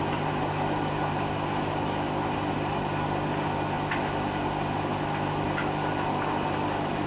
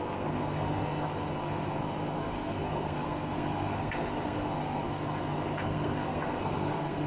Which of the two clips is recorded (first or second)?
first